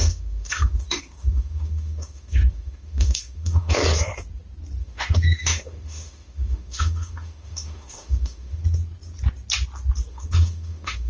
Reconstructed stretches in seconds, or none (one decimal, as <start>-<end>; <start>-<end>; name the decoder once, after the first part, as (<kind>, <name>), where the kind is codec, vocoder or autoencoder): 0.0-3.8 (autoencoder, DAC-VAE); 4.8-8.6; 10.1-11.1